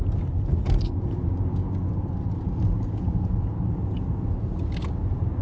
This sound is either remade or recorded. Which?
recorded